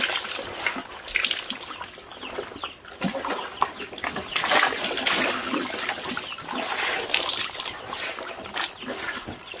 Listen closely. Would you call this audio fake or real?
real